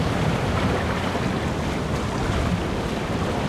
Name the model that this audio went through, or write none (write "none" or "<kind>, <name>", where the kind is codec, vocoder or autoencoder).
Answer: none